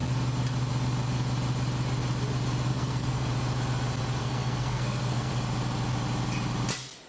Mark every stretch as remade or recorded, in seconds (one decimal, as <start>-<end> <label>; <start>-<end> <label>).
0.0-2.7 recorded; 2.7-3.3 remade; 3.3-4.2 recorded; 4.2-5.3 remade; 5.3-7.1 recorded